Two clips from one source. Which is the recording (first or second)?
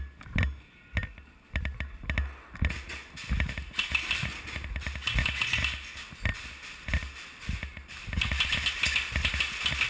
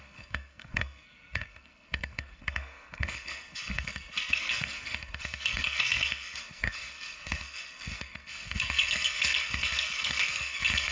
first